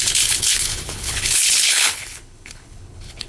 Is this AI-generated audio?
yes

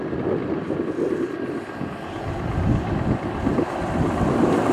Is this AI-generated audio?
no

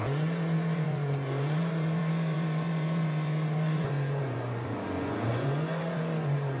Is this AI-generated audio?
yes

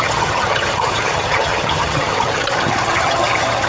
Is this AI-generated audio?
yes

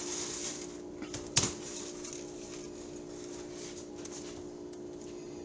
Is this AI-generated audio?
no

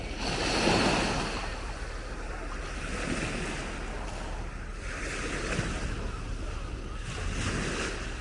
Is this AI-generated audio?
no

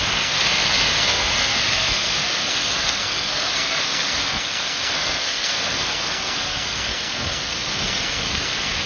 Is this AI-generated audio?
yes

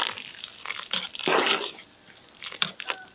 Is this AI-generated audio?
yes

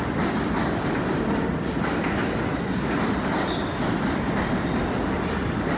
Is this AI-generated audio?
no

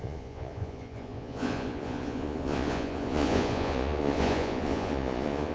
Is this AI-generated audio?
yes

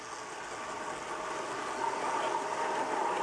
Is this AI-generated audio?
no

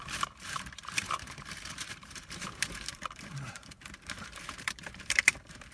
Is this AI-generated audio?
yes